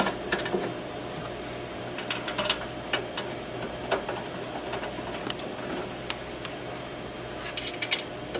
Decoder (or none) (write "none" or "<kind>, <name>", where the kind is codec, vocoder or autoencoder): none